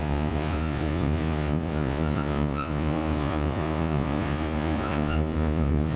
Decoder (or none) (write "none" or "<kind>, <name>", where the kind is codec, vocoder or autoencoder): vocoder, Vocos